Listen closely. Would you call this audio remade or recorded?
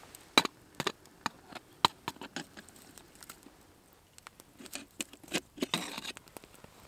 recorded